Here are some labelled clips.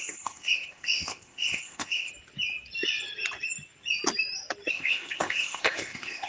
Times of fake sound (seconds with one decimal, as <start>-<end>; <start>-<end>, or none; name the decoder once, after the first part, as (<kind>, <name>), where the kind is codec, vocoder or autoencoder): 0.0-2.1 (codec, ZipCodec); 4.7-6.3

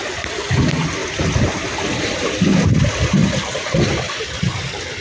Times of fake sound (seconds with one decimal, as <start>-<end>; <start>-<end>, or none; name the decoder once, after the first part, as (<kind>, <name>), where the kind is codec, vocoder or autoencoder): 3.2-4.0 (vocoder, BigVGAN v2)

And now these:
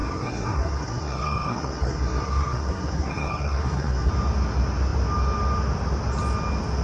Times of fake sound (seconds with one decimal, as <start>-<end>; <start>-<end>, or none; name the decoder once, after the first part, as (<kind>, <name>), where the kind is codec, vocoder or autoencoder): 0.0-4.1 (codec, SNAC)

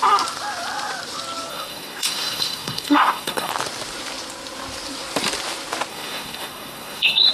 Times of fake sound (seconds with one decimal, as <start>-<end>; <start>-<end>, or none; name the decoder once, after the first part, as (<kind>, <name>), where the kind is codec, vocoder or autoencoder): 1.5-3.5 (codec, SNAC); 5.9-7.3

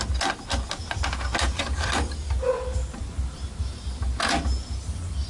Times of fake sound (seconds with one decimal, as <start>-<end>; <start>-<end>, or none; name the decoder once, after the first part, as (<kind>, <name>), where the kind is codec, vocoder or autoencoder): none